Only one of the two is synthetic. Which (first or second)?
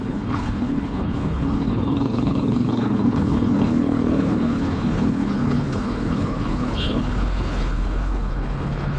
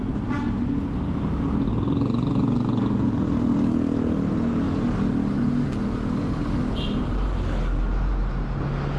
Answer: first